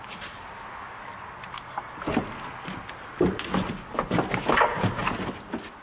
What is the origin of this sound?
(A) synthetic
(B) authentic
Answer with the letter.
B